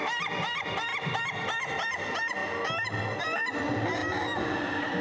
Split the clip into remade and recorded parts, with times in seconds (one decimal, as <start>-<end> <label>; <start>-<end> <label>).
0.0-0.9 remade; 0.9-1.7 recorded; 1.7-2.4 remade; 2.4-3.2 recorded; 3.2-4.0 remade; 4.0-4.6 recorded; 4.6-5.0 remade